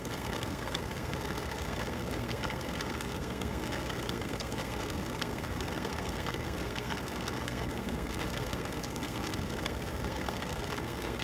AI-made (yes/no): yes